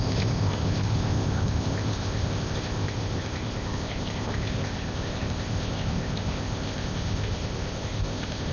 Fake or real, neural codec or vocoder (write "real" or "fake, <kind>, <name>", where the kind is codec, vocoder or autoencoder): fake, codec, ZipCodec